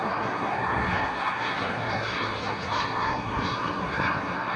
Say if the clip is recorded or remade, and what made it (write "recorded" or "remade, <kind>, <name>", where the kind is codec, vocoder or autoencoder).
remade, codec, SNAC